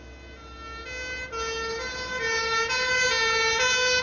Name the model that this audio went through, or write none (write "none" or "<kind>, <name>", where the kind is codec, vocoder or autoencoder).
none